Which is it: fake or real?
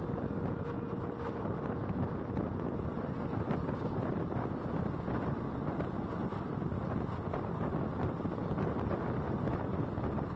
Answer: real